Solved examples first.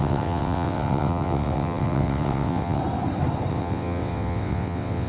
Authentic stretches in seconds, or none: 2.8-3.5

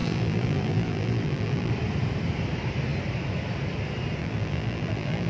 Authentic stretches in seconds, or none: 1.7-4.2